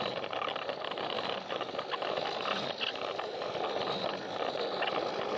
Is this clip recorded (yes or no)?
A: yes